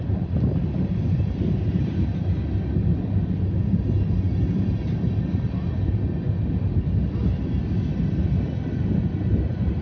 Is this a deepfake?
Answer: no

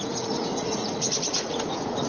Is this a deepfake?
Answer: yes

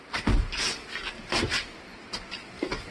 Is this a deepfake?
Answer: no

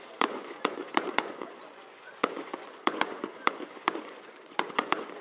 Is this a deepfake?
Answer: yes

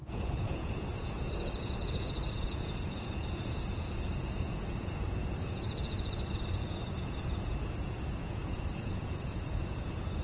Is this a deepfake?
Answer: yes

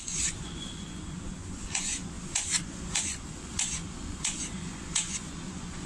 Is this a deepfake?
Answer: yes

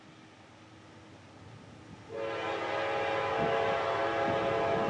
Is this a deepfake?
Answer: no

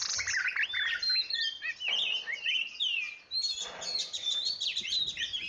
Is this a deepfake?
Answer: no